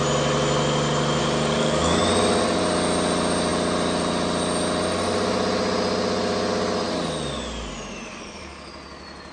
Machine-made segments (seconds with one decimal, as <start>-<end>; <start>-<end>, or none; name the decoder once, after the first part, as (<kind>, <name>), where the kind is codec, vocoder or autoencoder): 1.2-2.0 (codec, DAC); 8.1-8.7